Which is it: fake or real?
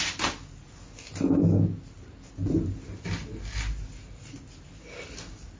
real